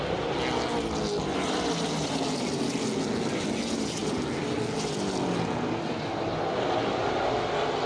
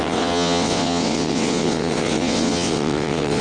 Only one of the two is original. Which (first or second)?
first